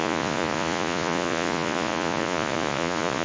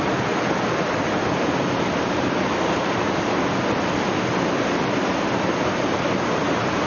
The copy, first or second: first